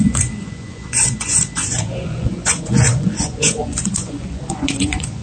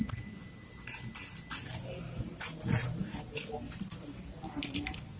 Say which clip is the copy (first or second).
first